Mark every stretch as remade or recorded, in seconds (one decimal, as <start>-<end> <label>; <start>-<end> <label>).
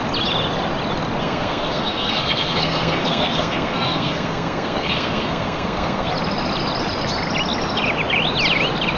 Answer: 0.0-1.2 recorded; 1.2-6.1 remade; 6.1-9.0 recorded